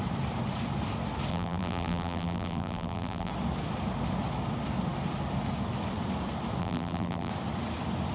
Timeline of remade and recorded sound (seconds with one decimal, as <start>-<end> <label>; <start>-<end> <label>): 0.0-1.3 recorded; 1.3-3.3 remade; 3.3-6.6 recorded; 6.6-7.3 remade; 7.3-8.1 recorded